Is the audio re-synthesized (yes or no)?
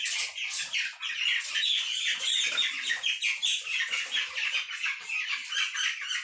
no